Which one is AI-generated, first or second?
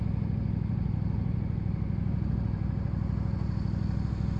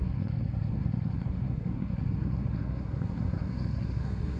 second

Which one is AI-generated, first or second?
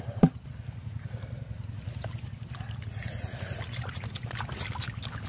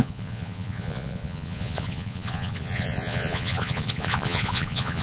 second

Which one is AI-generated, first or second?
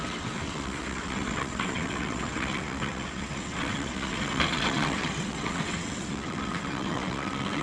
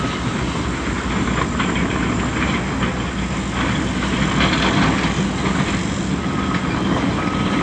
first